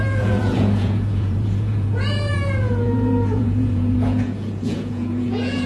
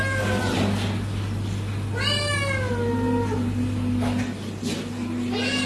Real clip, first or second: second